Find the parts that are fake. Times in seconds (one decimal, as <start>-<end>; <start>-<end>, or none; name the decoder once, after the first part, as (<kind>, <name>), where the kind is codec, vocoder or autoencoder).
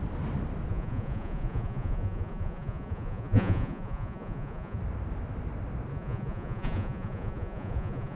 0.7-4.8 (vocoder, Vocos); 5.9-8.2